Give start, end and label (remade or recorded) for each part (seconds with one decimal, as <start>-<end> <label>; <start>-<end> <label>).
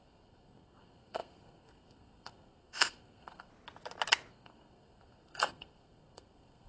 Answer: 0.0-3.5 remade; 3.5-4.3 recorded; 4.3-6.7 remade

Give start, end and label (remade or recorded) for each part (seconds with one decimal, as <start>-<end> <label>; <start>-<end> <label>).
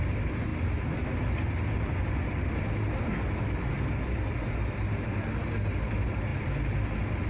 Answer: 0.0-7.3 recorded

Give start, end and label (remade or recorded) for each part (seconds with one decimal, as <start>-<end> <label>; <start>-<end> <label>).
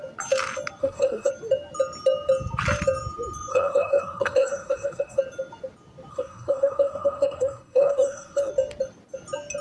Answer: 0.0-0.8 recorded; 0.8-1.3 remade; 1.3-3.5 recorded; 3.5-5.2 remade; 5.2-6.1 recorded; 6.1-8.5 remade; 8.5-9.6 recorded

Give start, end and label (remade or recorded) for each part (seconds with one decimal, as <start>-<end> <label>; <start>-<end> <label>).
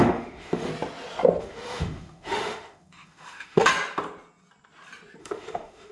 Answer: 0.0-0.7 remade; 0.7-1.4 recorded; 1.4-3.7 remade; 3.7-5.2 recorded; 5.2-5.9 remade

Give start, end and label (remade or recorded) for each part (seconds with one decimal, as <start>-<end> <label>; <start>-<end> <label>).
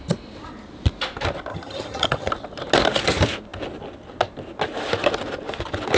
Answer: 0.0-1.5 recorded; 1.5-2.3 remade; 2.3-6.0 recorded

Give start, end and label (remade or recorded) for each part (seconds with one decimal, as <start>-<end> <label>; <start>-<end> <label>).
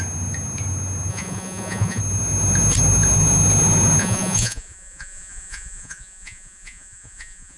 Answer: 0.0-1.1 recorded; 1.1-2.0 remade; 2.0-4.0 recorded; 4.0-7.6 remade